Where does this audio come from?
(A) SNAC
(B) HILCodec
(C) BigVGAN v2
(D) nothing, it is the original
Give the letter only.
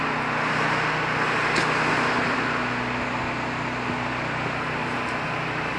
D